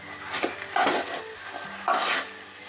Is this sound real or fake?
real